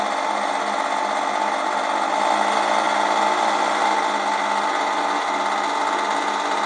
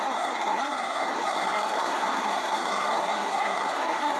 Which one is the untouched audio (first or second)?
first